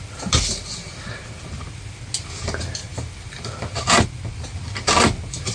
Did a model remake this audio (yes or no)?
no